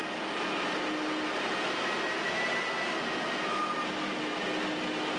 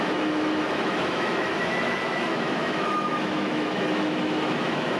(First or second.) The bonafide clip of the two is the first